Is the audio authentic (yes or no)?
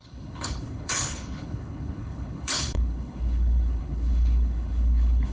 no